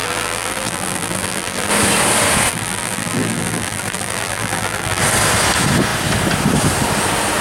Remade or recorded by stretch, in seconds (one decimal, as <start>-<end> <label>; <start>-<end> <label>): 0.0-1.7 remade; 1.7-2.5 recorded; 2.5-5.0 remade; 5.0-7.4 recorded